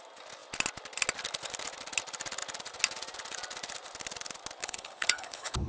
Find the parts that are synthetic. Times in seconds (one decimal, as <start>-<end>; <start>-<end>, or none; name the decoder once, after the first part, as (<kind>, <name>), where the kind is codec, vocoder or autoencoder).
4.6-5.7 (codec, HILCodec)